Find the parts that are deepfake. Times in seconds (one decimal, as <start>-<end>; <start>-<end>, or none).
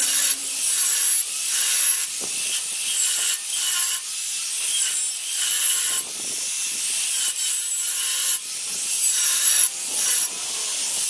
none